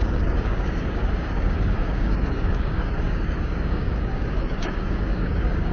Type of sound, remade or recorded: remade